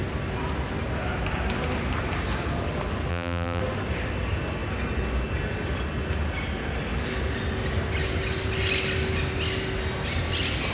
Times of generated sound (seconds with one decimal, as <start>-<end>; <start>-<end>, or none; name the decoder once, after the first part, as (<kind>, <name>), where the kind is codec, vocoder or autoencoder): 3.1-3.6 (vocoder, BigVGAN v2)